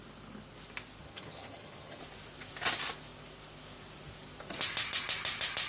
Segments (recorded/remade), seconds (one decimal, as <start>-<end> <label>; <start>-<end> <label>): 0.0-1.0 recorded; 1.0-2.0 remade; 2.0-5.7 recorded